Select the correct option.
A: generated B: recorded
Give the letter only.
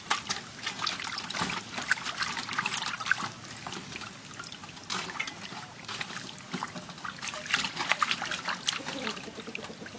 B